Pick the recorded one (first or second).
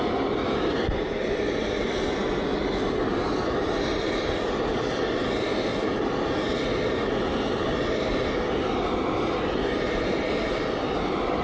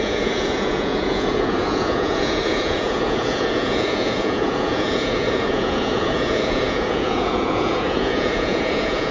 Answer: first